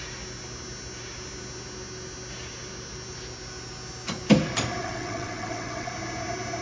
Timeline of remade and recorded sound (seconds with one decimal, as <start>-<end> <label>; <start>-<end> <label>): 0.0-4.8 recorded; 4.8-5.9 remade; 5.9-6.6 recorded